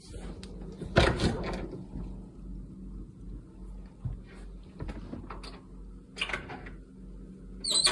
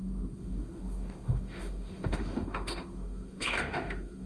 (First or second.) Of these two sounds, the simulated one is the second